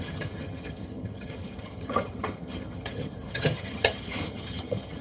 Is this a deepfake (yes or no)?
yes